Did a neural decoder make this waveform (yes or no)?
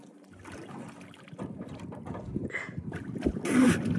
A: no